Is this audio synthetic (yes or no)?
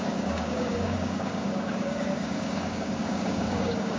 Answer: yes